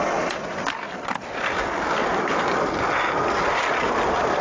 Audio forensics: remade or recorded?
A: recorded